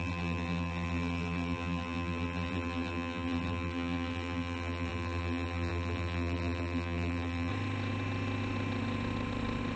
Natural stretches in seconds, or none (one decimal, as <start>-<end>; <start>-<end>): 7.5-9.8